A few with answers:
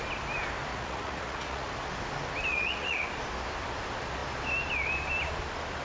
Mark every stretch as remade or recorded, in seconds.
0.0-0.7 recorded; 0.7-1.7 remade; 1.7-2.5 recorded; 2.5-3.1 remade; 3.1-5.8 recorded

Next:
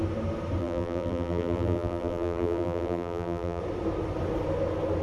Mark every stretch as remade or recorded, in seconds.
0.0-0.6 recorded; 0.6-3.6 remade; 3.6-5.0 recorded

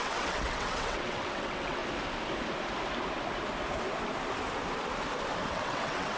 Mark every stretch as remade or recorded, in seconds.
0.0-1.8 remade; 1.8-5.5 recorded; 5.5-6.2 remade

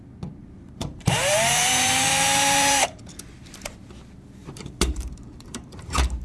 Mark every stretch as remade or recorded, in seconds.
0.0-0.4 recorded; 0.4-3.1 remade; 3.1-4.4 recorded; 4.4-6.2 remade

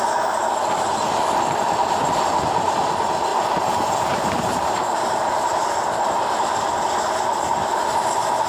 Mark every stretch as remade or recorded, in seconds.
0.0-3.3 recorded; 3.3-6.1 remade; 6.1-8.5 recorded

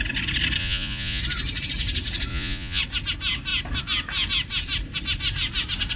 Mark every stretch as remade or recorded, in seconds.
0.0-0.6 recorded; 0.6-1.2 remade; 1.2-2.3 recorded; 2.3-2.8 remade; 2.8-6.0 recorded